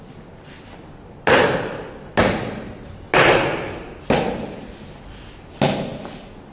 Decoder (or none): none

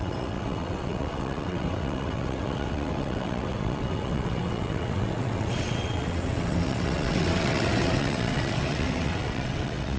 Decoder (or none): vocoder, WaveNeXt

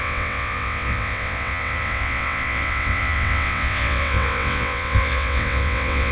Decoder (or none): vocoder, WaveNeXt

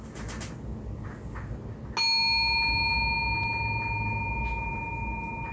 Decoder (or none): none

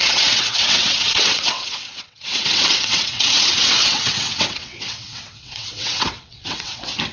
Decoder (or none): vocoder, WaveNeXt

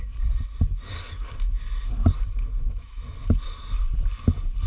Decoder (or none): none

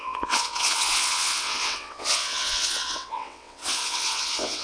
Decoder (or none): vocoder, WaveNeXt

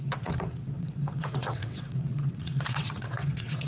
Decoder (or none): vocoder, WaveNeXt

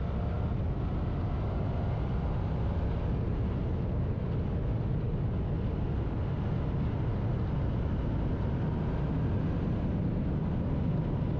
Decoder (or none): none